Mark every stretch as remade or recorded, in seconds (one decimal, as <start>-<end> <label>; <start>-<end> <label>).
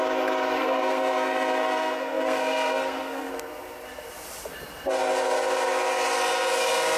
0.0-0.6 recorded; 0.6-3.3 remade; 3.3-7.0 recorded